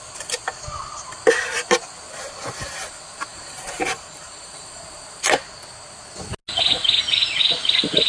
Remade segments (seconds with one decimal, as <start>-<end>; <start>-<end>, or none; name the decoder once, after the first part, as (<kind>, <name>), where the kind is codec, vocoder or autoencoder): 3.3-4.8 (vocoder, BigVGAN v2)